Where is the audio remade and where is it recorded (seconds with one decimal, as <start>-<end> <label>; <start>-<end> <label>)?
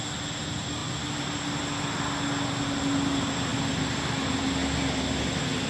0.0-5.7 recorded